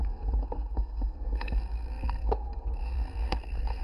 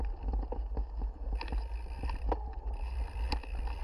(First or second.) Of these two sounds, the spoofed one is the first